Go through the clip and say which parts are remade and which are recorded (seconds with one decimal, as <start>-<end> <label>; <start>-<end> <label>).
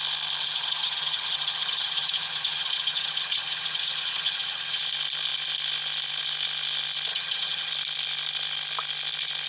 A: 0.0-0.4 recorded; 0.4-4.8 remade; 4.8-7.1 recorded; 7.1-7.7 remade; 7.7-9.5 recorded